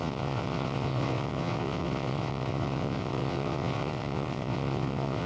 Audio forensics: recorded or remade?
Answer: remade